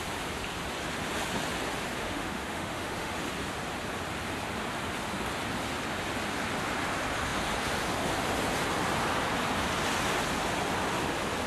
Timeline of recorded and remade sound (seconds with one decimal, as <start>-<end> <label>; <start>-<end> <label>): 0.0-2.0 recorded; 2.0-3.1 remade; 3.1-11.5 recorded